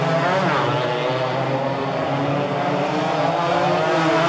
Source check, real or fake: real